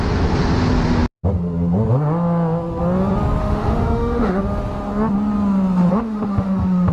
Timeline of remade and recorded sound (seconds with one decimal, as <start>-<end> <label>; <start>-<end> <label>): 0.0-3.4 recorded; 3.4-4.4 remade; 4.4-5.9 recorded; 5.9-6.9 remade